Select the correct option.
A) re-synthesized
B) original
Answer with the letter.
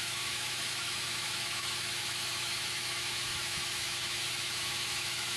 A